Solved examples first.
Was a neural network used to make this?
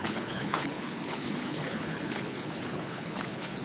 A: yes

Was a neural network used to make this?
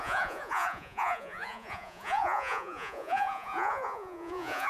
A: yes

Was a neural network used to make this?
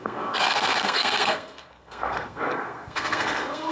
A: yes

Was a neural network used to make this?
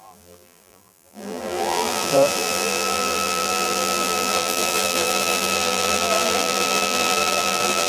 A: yes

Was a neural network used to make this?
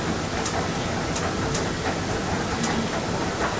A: no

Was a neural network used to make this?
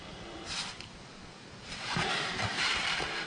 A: yes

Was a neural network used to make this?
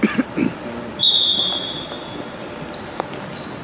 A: no